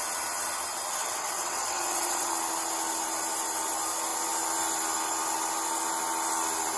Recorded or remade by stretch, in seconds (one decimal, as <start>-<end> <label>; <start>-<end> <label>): 0.0-1.0 recorded; 1.0-2.3 remade; 2.3-6.8 recorded